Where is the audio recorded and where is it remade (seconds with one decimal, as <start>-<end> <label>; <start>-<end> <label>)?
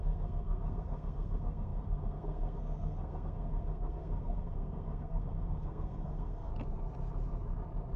0.0-6.5 remade; 6.5-8.0 recorded